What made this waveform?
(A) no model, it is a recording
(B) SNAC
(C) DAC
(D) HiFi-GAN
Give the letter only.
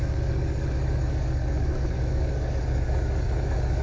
C